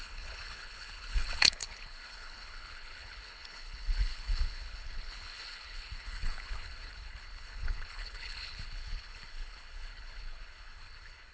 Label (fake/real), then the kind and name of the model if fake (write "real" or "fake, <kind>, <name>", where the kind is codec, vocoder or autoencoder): fake, codec, HILCodec